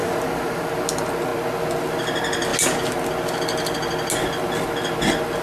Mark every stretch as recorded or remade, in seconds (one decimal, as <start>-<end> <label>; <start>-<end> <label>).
0.0-0.7 remade; 0.7-5.4 recorded